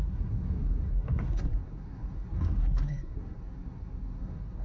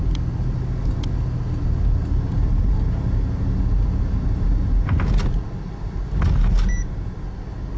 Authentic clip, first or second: second